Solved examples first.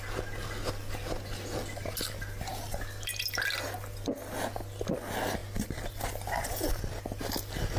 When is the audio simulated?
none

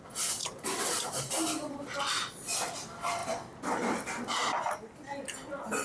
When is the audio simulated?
0.4-1.2 (vocoder, BigVGAN v2)

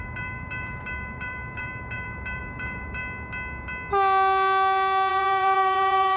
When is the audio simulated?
0.0-3.0 (vocoder, BigVGAN v2); 5.1-6.2

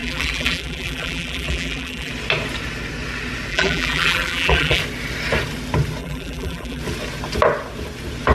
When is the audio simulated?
0.0-2.1 (vocoder, BigVGAN v2); 3.5-4.8; 6.0-6.8

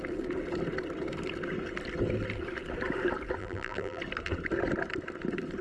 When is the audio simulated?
3.4-4.0 (vocoder, BigVGAN v2)

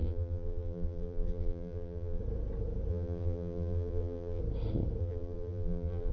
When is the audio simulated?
0.0-2.2 (vocoder, BigVGAN v2); 2.9-4.4; 5.0-6.1

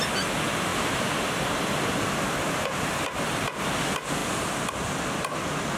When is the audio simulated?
0.7-3.3 (vocoder, BigVGAN v2)

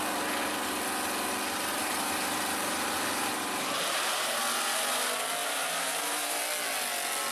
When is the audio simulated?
1.7-4.4 (vocoder, BigVGAN v2); 5.4-6.4